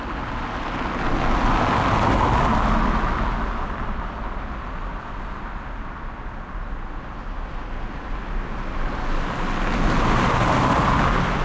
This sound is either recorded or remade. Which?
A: recorded